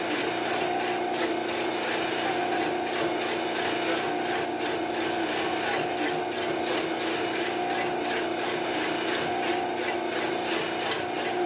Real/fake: real